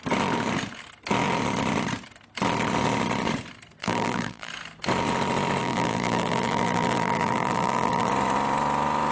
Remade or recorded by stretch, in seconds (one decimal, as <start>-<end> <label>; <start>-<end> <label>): 0.0-3.8 recorded; 3.8-4.5 remade; 4.5-5.6 recorded; 5.6-8.1 remade; 8.1-9.1 recorded